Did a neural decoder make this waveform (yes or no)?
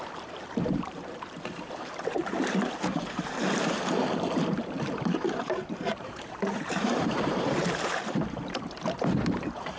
yes